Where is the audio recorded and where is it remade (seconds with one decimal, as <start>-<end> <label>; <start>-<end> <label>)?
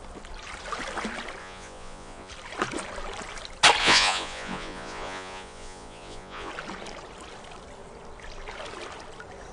0.0-1.4 recorded; 1.4-2.3 remade; 2.3-3.8 recorded; 3.8-6.5 remade; 6.5-9.5 recorded